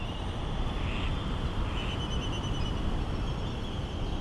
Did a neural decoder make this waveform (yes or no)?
no